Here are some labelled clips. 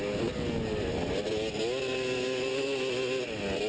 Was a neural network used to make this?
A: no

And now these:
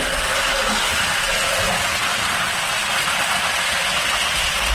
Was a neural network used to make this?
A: no